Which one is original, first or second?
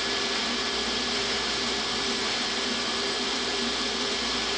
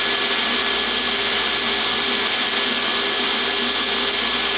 second